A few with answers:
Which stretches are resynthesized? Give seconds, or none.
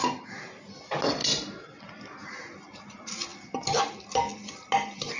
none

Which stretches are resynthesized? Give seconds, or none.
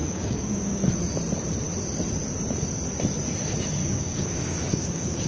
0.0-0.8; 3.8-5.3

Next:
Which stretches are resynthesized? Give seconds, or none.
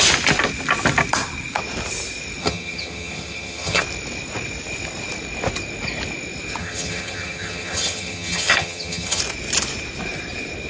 2.4-3.8; 6.6-9.2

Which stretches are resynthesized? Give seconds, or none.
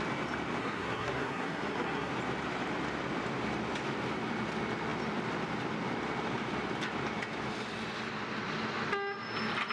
0.6-2.1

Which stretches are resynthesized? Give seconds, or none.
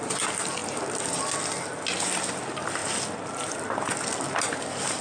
none